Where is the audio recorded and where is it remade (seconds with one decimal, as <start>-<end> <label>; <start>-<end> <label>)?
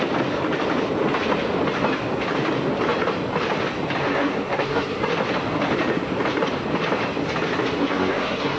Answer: 0.0-4.0 recorded; 4.0-5.0 remade; 5.0-7.8 recorded; 7.8-8.6 remade